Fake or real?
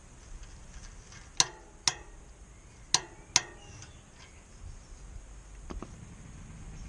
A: real